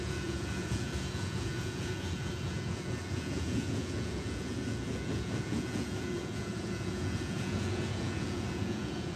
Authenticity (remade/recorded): remade